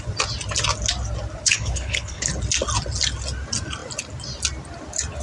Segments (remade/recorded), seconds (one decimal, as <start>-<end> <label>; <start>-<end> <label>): 0.0-1.4 recorded; 1.4-2.3 remade; 2.3-5.2 recorded